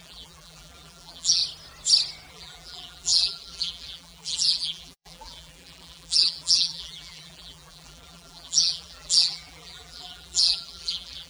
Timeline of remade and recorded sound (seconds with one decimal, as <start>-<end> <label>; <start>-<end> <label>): 0.0-1.4 remade; 1.4-2.3 recorded; 2.3-11.3 remade